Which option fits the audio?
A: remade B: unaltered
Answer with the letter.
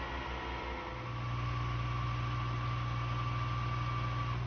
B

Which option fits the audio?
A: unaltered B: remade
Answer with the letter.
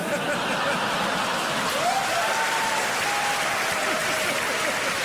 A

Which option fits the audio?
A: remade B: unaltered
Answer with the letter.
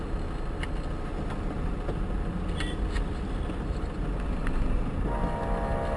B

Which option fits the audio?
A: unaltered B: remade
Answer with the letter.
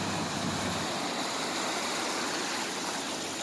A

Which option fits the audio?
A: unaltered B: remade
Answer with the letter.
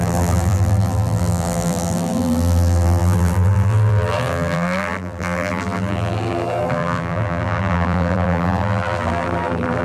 B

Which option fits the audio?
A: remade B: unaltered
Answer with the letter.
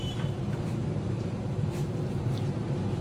A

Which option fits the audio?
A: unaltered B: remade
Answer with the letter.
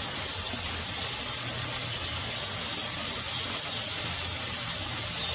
A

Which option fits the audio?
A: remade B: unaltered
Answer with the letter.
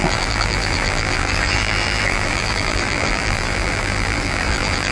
A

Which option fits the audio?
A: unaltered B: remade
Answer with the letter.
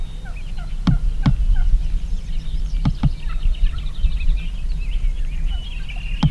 A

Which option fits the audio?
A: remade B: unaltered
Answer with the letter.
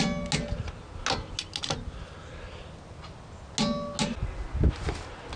B